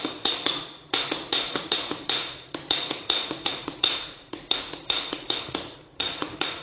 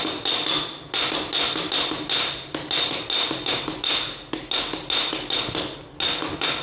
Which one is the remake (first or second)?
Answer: first